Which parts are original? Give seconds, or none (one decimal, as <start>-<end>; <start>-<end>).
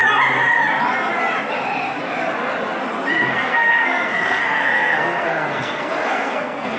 0.0-3.1